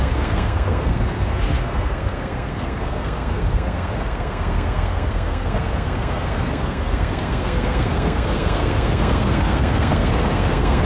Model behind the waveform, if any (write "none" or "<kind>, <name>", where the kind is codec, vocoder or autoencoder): codec, SNAC